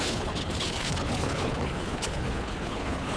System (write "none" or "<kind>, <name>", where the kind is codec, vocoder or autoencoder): codec, HILCodec